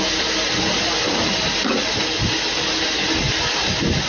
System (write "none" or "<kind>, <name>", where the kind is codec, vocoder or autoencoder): none